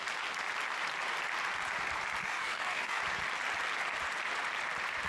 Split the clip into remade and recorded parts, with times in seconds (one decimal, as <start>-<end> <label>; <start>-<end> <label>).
0.0-2.2 recorded; 2.2-3.0 remade; 3.0-5.1 recorded